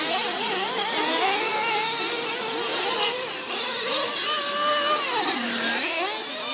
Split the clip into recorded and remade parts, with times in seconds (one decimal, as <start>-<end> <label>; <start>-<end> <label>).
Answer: 0.0-6.5 recorded